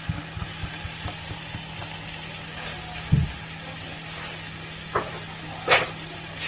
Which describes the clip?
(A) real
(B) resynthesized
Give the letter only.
A